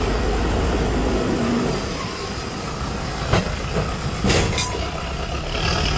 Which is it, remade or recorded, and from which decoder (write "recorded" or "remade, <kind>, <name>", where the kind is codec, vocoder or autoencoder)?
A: recorded